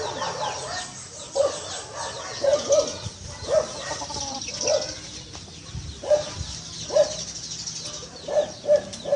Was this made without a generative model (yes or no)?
yes